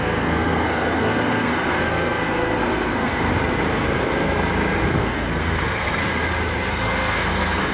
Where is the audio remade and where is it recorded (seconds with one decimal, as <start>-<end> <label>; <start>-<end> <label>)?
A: 0.0-3.3 remade; 3.3-5.0 recorded; 5.0-6.0 remade; 6.0-6.7 recorded; 6.7-7.7 remade